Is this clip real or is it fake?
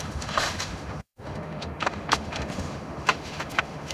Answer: fake